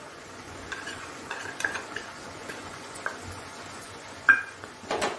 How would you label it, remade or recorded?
remade